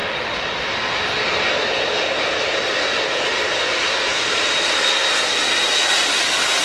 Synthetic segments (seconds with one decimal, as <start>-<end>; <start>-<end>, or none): 4.1-5.2